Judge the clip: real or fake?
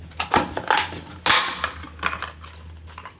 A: real